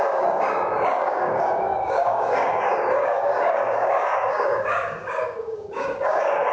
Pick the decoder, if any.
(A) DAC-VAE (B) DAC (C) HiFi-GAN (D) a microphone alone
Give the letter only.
B